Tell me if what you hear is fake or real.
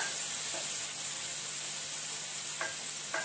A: real